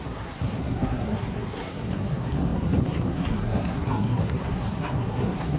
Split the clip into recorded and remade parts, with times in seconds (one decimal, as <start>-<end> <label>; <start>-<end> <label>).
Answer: 0.0-5.6 remade

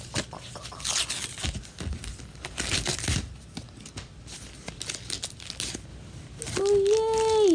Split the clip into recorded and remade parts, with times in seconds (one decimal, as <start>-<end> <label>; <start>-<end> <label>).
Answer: 0.0-7.5 recorded

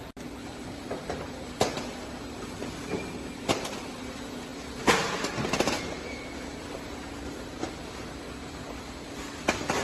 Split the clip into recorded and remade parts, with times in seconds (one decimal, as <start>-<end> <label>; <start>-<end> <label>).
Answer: 0.0-9.8 recorded

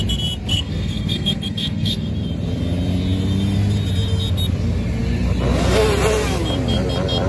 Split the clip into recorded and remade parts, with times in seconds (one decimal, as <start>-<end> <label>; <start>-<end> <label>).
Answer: 0.0-0.5 recorded; 0.5-2.1 remade; 2.1-7.3 recorded

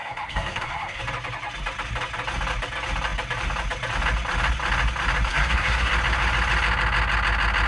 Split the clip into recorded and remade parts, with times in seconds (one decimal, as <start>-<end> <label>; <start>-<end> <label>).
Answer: 0.0-1.0 remade; 1.0-5.3 recorded; 5.3-5.9 remade; 5.9-7.7 recorded

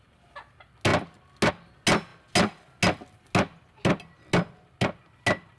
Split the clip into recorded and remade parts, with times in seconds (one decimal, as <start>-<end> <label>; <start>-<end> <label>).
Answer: 0.0-5.6 recorded

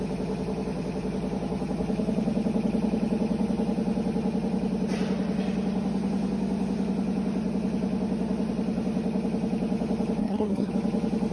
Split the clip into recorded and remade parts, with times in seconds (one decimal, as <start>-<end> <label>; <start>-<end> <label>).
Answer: 0.0-10.2 recorded; 10.2-10.7 remade; 10.7-11.3 recorded